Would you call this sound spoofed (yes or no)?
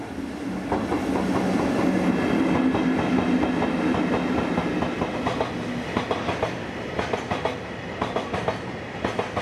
no